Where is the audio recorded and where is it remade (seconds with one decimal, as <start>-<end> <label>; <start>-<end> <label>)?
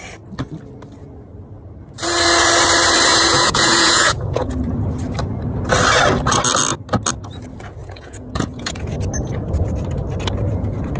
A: 0.0-3.1 recorded; 3.1-4.5 remade; 4.5-7.8 recorded; 7.8-8.9 remade; 8.9-11.0 recorded